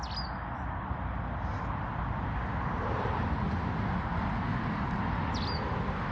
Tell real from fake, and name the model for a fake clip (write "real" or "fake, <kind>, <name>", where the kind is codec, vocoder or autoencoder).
real